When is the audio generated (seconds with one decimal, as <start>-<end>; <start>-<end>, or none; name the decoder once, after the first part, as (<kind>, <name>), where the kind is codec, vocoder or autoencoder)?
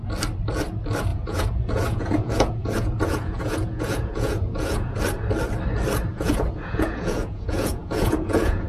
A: 1.1-5.0 (vocoder, Vocos); 6.1-8.7